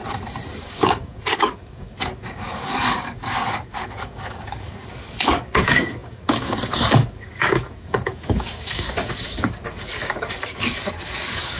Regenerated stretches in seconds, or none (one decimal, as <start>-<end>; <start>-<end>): 0.6-11.6